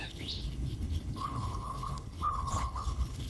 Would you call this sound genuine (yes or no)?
no